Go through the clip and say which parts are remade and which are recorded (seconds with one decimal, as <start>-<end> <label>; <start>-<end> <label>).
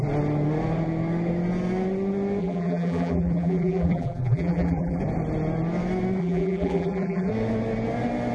0.0-2.4 recorded; 2.4-5.0 remade; 5.0-6.2 recorded; 6.2-7.3 remade; 7.3-8.3 recorded